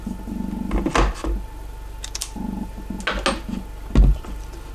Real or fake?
real